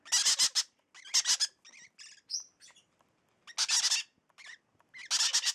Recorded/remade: recorded